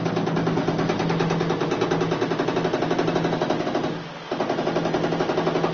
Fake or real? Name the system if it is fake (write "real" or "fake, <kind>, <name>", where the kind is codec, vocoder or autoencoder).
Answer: real